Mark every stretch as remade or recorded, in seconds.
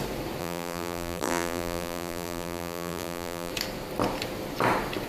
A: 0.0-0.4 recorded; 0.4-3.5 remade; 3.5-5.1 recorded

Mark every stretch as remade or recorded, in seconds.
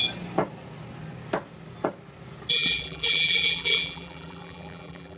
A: 0.0-2.5 recorded; 2.5-5.2 remade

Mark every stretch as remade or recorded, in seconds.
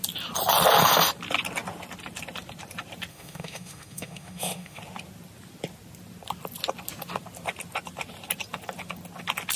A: 0.0-3.1 recorded; 3.1-4.8 remade; 4.8-9.6 recorded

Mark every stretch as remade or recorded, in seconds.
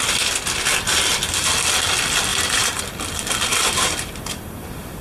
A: 0.0-2.3 recorded; 2.3-2.8 remade; 2.8-3.5 recorded; 3.5-5.0 remade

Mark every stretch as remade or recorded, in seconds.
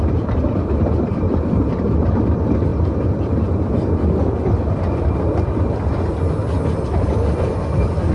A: 0.0-8.1 remade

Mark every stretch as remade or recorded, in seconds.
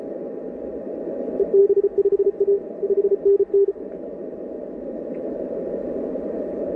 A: 0.0-1.6 remade; 1.6-3.7 recorded; 3.7-4.2 remade; 4.2-4.9 recorded; 4.9-6.8 remade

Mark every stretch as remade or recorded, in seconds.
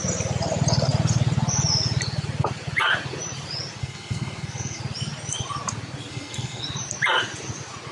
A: 0.0-3.8 recorded; 3.8-4.8 remade; 4.8-6.1 recorded; 6.1-6.6 remade; 6.6-7.9 recorded